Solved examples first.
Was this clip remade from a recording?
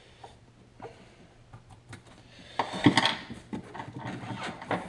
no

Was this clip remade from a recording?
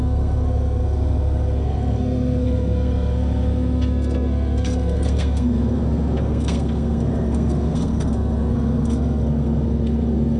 yes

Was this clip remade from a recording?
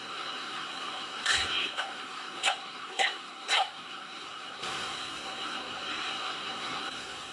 yes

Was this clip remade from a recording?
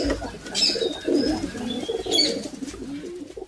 no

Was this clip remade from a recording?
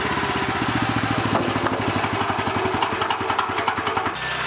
no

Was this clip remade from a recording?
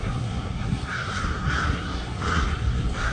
yes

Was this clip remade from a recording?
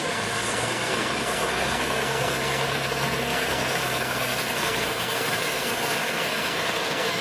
yes